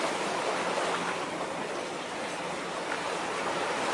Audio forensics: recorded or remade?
recorded